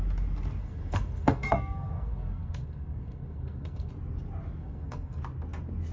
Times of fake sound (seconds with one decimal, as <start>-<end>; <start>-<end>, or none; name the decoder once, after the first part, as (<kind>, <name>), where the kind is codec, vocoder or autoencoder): 0.6-3.9 (codec, SNAC); 4.6-5.2